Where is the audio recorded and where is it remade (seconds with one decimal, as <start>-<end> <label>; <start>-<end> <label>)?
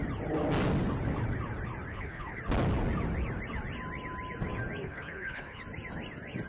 0.0-1.9 recorded; 1.9-2.4 remade; 2.4-4.8 recorded; 4.8-5.6 remade; 5.6-6.5 recorded